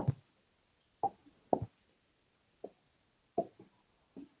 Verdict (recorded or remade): recorded